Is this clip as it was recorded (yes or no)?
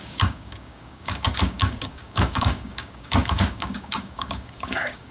no